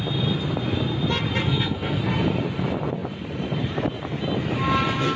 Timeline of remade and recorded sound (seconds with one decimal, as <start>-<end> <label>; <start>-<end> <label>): 0.0-1.4 recorded; 1.4-2.0 remade; 2.0-5.2 recorded